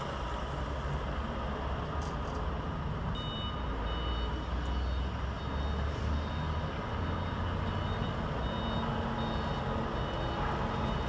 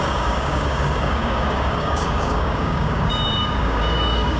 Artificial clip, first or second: second